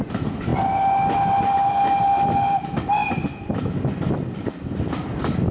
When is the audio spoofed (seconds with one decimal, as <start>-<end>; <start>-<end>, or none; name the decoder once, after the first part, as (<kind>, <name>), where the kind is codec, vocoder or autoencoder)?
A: none